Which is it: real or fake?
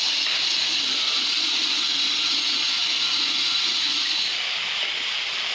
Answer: real